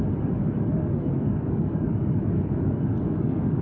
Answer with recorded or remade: remade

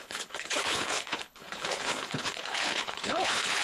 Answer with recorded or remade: remade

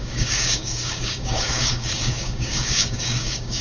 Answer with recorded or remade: remade